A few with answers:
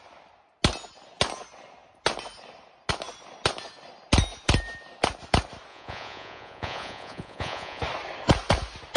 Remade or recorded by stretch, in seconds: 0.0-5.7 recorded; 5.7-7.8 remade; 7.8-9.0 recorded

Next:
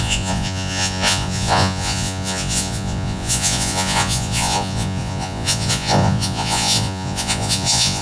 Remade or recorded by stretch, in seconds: 0.0-8.0 remade

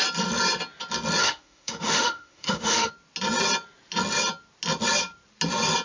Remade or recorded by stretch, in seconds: 0.0-1.2 recorded; 1.2-2.9 remade; 2.9-5.8 recorded

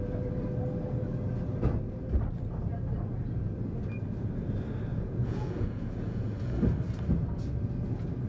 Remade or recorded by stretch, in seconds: 0.0-4.9 recorded; 4.9-6.6 remade; 6.6-8.3 recorded

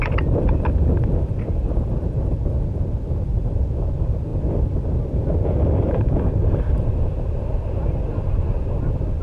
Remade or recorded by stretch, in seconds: 0.0-9.2 recorded

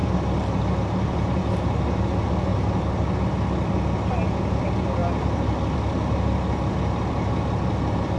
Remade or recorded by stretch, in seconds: 0.0-8.2 recorded